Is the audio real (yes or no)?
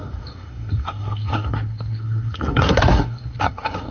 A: no